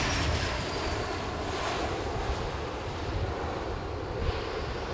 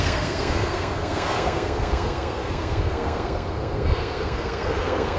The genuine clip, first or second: first